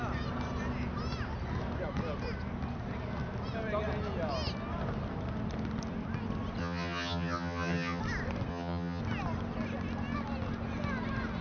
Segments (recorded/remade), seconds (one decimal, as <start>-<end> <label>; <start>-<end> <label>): 0.0-6.6 recorded; 6.6-8.0 remade; 8.0-8.5 recorded; 8.5-9.0 remade; 9.0-11.4 recorded